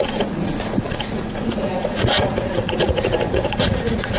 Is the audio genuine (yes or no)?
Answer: no